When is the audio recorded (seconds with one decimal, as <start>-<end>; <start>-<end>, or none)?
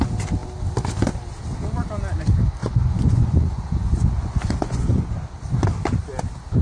0.0-2.6; 5.1-6.6